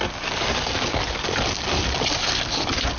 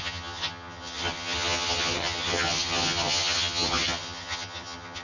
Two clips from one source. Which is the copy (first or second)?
second